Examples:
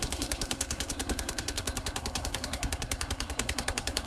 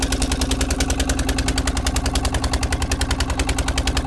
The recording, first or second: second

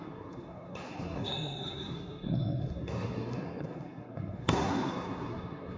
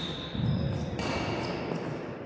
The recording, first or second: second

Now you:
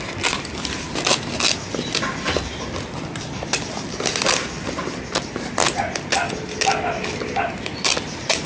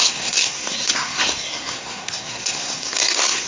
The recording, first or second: first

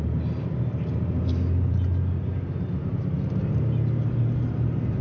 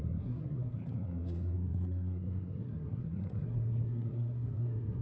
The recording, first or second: first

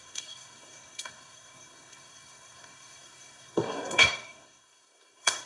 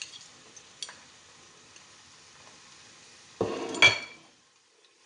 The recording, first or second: second